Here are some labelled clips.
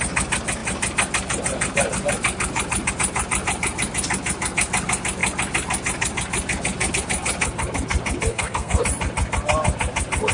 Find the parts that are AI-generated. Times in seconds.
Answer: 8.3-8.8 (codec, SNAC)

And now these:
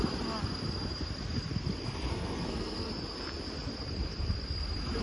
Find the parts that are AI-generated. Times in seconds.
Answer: 2.1-2.9 (codec, SNAC)

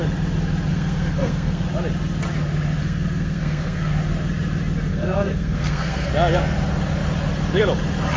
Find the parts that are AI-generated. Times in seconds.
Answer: 0.7-1.6 (codec, SNAC); 2.8-3.9; 4.9-6.1

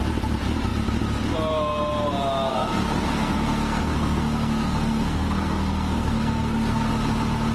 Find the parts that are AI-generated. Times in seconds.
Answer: 2.5-6.9 (codec, SNAC)